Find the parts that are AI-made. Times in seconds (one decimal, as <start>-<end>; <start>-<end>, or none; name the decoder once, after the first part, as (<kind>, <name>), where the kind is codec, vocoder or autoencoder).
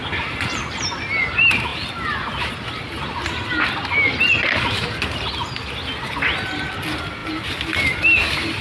none